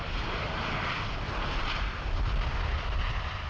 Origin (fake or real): real